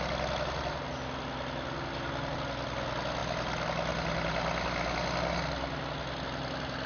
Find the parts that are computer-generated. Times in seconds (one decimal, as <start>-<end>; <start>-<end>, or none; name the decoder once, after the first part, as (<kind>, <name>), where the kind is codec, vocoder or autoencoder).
none